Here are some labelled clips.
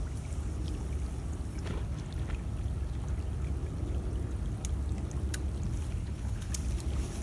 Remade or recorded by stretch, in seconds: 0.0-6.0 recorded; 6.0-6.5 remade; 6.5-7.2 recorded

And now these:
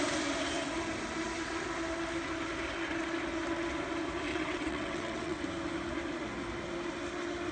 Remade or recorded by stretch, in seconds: 0.0-4.3 recorded; 4.3-5.4 remade; 5.4-7.5 recorded

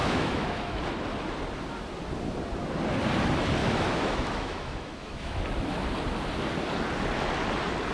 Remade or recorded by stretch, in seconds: 0.0-0.8 remade; 0.8-3.6 recorded; 3.6-5.4 remade; 5.4-7.9 recorded

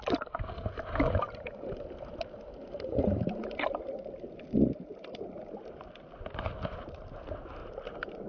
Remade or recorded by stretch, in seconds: 0.0-7.6 recorded; 7.6-8.3 remade

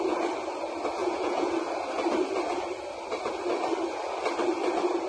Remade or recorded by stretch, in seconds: 0.0-1.0 recorded; 1.0-1.5 remade; 1.5-5.1 recorded

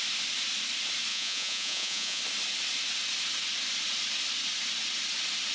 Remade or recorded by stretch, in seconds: 0.0-1.1 recorded; 1.1-2.2 remade; 2.2-5.5 recorded

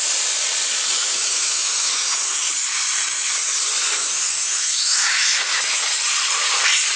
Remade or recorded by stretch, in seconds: 0.0-1.0 recorded; 1.0-2.5 remade; 2.5-4.0 recorded; 4.0-5.8 remade; 5.8-7.0 recorded

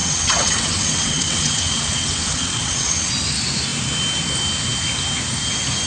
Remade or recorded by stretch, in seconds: 0.0-3.1 remade; 3.1-5.9 recorded